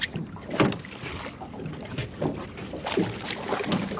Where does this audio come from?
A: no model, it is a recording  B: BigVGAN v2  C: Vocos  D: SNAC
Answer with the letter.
B